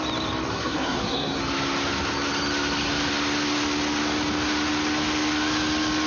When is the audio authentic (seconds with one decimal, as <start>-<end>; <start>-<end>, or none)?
0.0-0.5; 1.4-6.1